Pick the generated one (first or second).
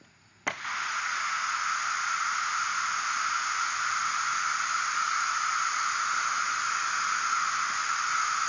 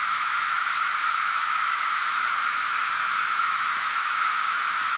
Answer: second